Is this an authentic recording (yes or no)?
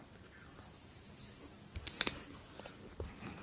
yes